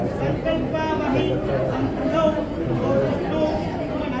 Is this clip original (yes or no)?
yes